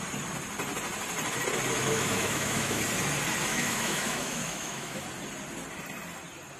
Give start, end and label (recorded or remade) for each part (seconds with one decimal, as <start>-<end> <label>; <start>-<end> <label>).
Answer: 0.0-1.8 recorded; 1.8-2.8 remade; 2.8-3.5 recorded; 3.5-5.0 remade; 5.0-6.6 recorded